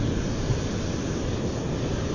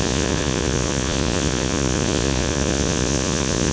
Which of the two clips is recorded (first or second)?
first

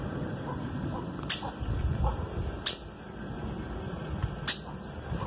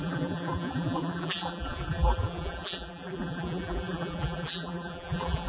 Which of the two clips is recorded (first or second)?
first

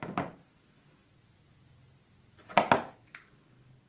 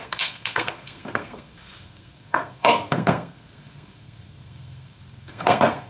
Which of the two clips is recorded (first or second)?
first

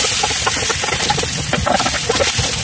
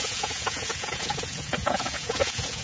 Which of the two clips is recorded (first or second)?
first